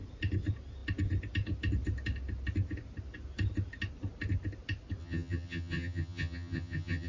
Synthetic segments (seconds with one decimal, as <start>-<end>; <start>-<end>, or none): 5.0-7.1